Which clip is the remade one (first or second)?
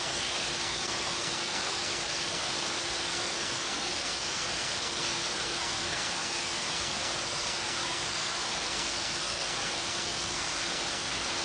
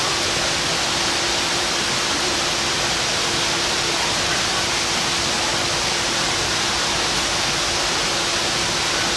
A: first